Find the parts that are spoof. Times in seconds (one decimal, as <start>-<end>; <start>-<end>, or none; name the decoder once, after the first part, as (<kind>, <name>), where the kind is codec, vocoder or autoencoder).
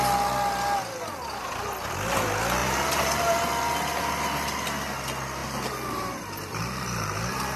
2.6-3.4 (vocoder, BigVGAN v2); 5.4-7.6